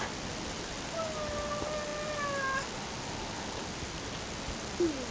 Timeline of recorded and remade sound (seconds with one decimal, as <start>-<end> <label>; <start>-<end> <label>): 0.0-5.1 recorded